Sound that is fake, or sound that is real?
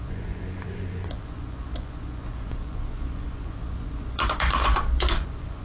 fake